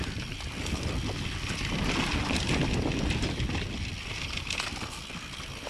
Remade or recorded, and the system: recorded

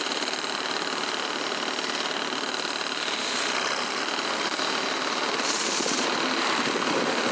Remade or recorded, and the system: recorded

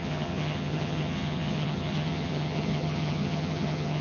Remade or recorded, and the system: remade, vocoder, HiFi-GAN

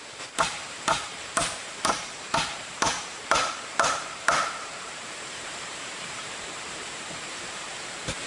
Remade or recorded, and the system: remade, vocoder, BigVGAN v2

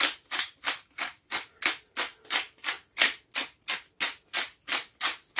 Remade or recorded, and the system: recorded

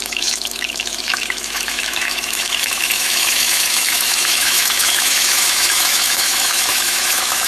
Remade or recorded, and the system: remade, autoencoder, DAC-VAE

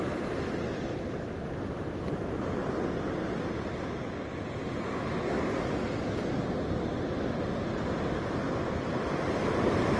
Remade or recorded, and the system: recorded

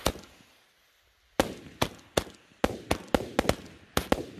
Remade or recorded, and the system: recorded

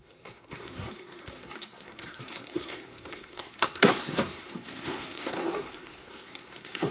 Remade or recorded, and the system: remade, codec, SNAC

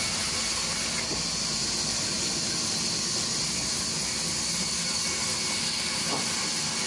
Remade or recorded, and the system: recorded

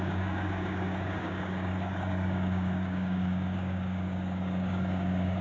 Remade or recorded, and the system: remade, codec, DAC